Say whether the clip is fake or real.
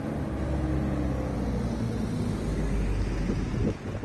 real